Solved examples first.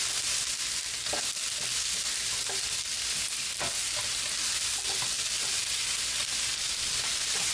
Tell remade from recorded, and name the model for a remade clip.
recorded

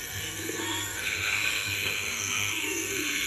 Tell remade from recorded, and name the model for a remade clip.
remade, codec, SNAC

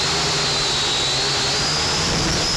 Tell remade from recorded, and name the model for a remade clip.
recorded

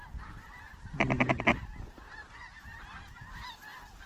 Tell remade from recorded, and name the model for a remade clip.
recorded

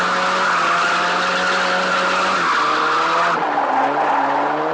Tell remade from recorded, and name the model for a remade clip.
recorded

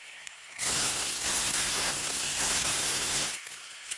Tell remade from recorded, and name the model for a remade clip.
remade, codec, SNAC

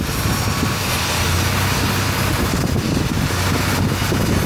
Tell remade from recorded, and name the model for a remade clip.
recorded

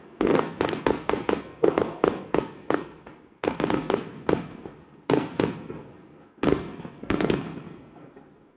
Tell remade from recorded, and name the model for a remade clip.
remade, codec, SNAC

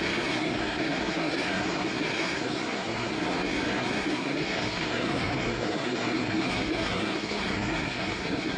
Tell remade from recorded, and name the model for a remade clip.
remade, codec, SNAC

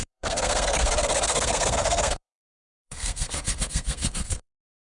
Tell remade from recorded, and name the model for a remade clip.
remade, codec, SNAC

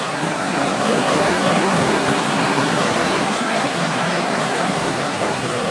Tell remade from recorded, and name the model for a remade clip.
remade, codec, SNAC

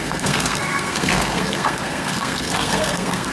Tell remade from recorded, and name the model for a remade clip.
remade, codec, SNAC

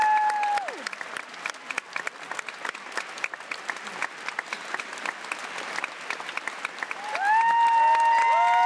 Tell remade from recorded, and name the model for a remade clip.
recorded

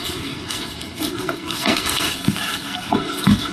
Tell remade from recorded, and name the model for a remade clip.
remade, codec, SNAC